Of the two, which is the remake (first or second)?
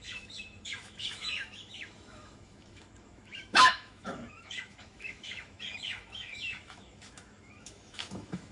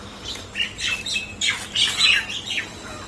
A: first